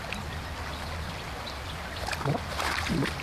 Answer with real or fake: real